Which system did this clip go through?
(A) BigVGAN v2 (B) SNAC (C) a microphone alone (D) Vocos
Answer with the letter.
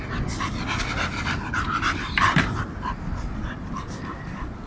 C